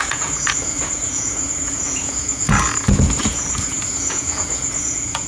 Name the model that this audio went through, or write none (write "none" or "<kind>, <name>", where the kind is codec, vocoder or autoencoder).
vocoder, Vocos